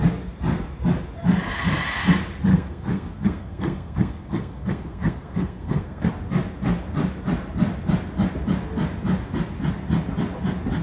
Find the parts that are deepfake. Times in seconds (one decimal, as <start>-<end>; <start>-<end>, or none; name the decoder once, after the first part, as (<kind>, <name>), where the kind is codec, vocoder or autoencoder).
2.5-6.1 (codec, SNAC)